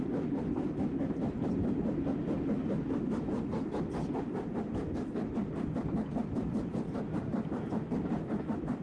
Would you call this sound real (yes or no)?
yes